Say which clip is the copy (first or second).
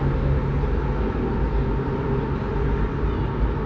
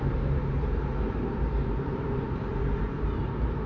second